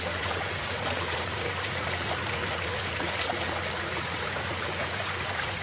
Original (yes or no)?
no